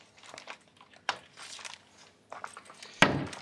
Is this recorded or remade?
recorded